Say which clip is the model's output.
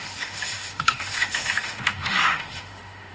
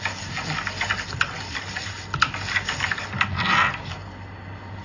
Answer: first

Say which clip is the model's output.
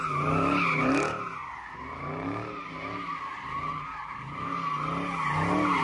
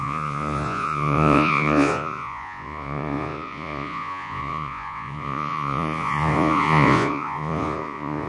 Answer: second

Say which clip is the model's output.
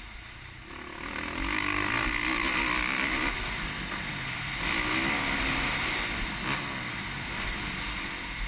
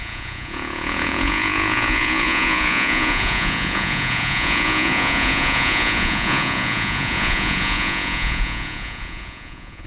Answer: second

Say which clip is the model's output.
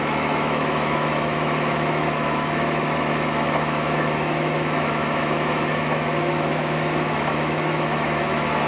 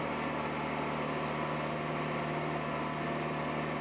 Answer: first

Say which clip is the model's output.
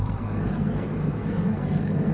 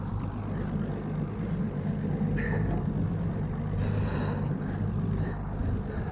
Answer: first